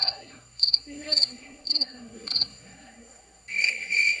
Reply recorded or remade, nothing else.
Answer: remade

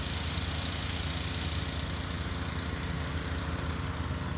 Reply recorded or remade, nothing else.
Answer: recorded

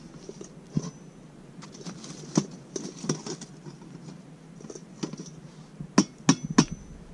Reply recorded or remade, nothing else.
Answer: recorded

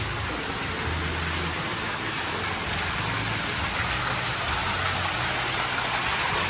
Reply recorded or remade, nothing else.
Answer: recorded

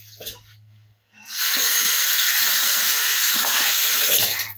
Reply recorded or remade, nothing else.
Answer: remade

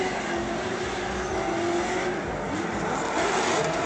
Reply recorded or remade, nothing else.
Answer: recorded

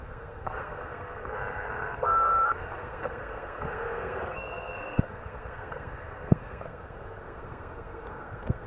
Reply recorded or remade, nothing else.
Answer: remade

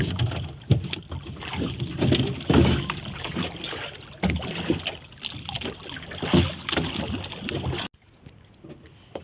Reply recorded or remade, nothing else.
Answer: recorded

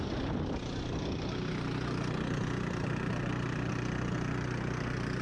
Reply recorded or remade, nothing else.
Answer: recorded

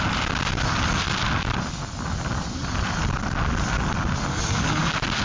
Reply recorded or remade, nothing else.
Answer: recorded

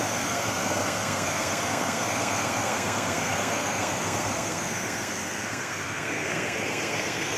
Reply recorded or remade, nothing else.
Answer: remade